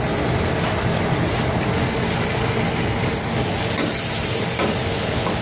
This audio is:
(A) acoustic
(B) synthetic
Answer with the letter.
A